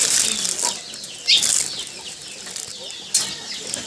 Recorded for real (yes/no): yes